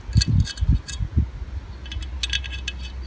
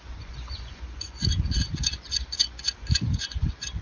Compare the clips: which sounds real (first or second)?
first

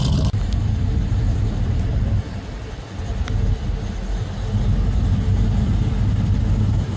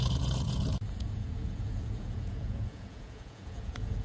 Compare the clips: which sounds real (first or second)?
first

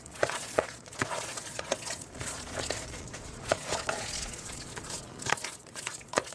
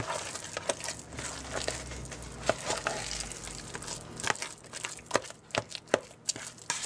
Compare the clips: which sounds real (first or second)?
second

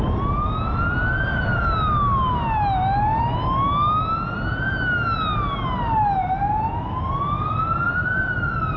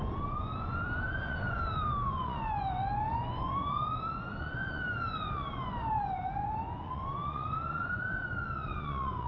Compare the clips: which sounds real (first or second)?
first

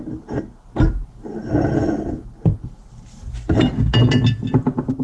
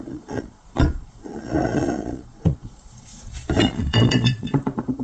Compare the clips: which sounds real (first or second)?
first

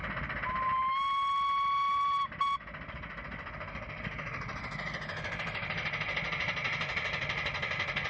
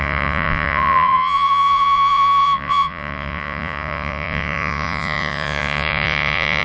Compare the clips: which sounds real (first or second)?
first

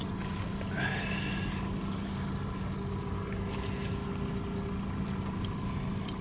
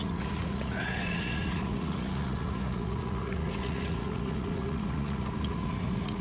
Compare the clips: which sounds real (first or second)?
first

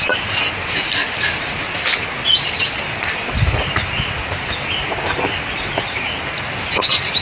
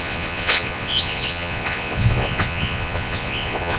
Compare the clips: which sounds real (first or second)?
first